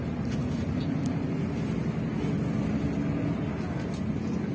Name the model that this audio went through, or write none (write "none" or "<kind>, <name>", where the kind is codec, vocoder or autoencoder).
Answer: none